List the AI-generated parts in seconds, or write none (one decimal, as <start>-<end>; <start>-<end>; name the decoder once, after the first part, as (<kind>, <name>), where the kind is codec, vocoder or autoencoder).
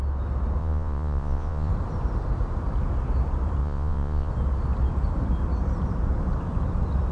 0.6-1.7 (vocoder, Vocos); 3.6-4.3